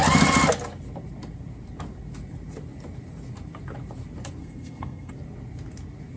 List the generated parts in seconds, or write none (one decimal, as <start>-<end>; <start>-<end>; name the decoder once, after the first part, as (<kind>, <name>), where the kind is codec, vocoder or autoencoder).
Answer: 4.4-5.1 (codec, SNAC)